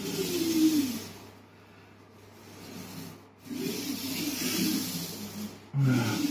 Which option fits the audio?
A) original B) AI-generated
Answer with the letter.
A